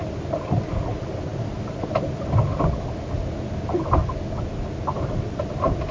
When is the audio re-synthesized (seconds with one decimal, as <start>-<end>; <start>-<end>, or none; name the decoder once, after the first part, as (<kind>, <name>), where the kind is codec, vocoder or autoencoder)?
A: none